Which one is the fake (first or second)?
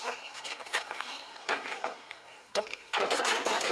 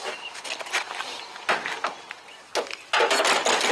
first